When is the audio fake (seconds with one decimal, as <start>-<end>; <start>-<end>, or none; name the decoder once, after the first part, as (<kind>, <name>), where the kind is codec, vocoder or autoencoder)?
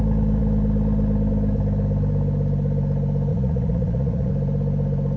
3.3-4.3 (vocoder, Vocos)